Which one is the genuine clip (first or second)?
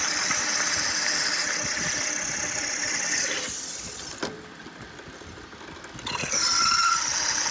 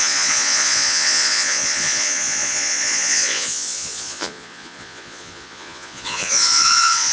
first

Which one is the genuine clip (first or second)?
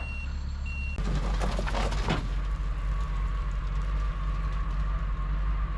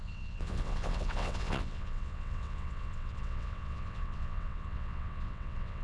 first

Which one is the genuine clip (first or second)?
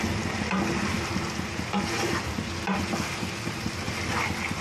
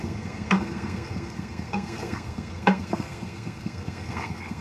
first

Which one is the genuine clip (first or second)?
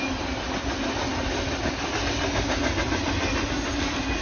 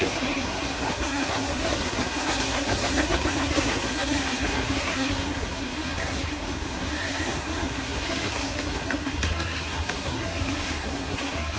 first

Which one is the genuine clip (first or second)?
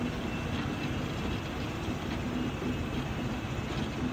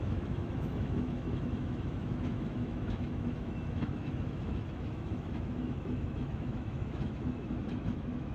first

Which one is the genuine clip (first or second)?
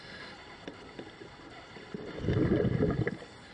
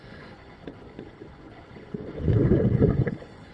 first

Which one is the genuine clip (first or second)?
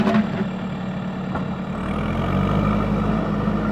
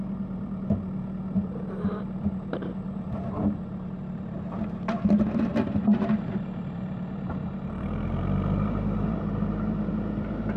first